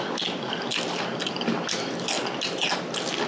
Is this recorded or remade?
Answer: recorded